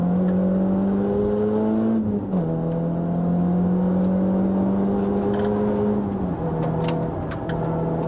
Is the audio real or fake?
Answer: real